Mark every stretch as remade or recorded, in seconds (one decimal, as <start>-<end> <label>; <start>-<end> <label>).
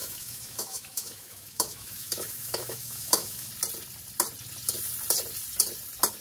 0.0-3.5 remade; 3.5-6.2 recorded